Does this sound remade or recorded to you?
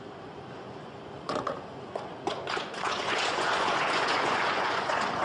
remade